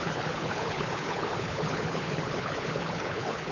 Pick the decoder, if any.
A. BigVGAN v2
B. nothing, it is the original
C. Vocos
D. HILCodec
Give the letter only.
D